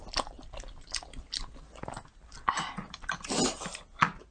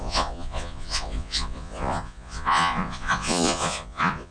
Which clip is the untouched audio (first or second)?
first